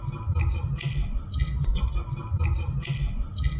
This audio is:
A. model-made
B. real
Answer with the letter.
B